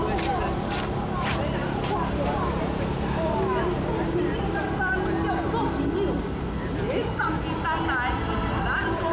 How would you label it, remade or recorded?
recorded